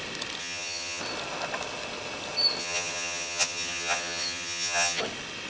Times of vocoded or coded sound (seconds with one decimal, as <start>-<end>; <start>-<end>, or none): 0.4-1.0; 2.6-5.0